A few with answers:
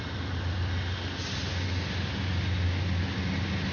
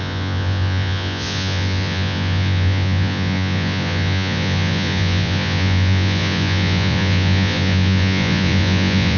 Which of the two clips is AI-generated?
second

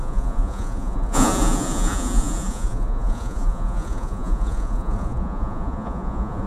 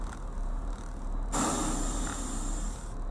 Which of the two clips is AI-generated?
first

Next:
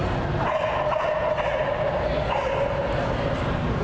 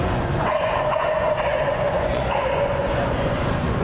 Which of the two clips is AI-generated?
second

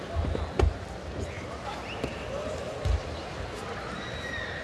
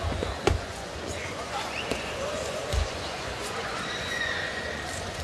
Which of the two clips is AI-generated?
second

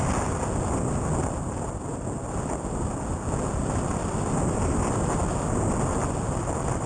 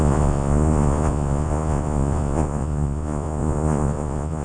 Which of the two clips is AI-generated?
second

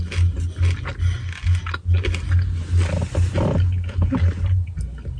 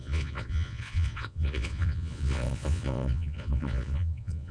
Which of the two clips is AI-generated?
second